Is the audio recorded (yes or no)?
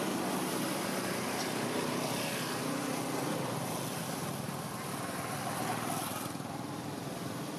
yes